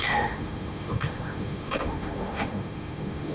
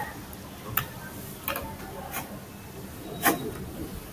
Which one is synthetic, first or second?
first